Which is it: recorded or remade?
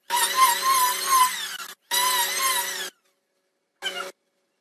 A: recorded